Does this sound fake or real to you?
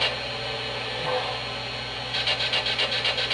real